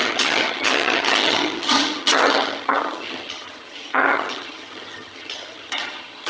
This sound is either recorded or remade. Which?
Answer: remade